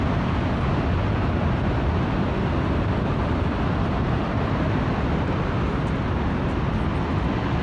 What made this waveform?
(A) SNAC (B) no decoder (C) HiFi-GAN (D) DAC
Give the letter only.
B